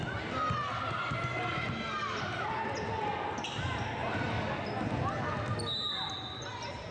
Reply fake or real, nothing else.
real